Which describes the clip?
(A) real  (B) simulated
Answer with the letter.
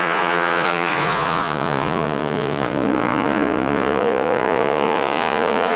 B